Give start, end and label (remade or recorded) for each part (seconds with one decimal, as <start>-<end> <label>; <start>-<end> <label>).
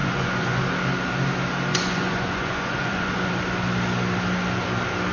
0.0-0.6 remade; 0.6-1.7 recorded; 1.7-3.3 remade; 3.3-5.1 recorded